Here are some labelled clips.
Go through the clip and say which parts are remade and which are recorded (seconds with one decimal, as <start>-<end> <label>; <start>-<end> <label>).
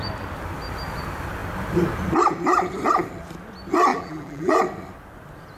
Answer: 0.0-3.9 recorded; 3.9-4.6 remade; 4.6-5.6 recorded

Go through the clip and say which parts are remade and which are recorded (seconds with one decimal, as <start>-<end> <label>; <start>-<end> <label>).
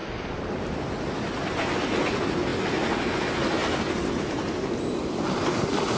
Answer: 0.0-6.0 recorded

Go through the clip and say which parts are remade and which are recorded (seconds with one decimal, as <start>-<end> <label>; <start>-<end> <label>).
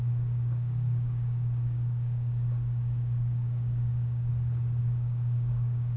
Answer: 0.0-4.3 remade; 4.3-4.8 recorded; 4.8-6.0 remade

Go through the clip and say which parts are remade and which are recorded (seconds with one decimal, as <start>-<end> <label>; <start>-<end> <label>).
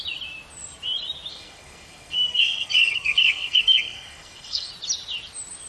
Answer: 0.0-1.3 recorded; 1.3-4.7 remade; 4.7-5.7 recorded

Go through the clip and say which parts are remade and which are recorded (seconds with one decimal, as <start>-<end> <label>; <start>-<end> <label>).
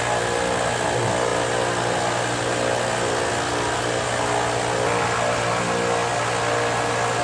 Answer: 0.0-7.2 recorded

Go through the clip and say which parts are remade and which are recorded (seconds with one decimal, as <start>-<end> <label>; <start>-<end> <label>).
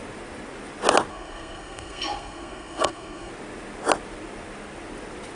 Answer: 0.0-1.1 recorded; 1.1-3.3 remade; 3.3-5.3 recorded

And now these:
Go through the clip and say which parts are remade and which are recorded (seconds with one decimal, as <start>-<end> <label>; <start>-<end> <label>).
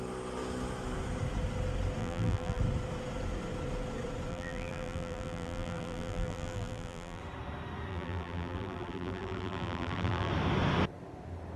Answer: 0.0-2.0 recorded; 2.0-2.6 remade; 2.6-4.3 recorded; 4.3-7.2 remade; 7.2-7.9 recorded; 7.9-10.3 remade; 10.3-11.6 recorded